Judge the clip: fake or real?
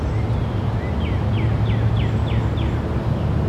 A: real